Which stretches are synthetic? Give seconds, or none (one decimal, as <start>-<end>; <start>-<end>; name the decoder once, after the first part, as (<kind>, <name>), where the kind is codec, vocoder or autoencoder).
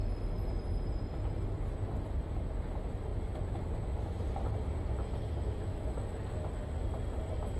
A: 5.7-6.2 (autoencoder, DAC-VAE)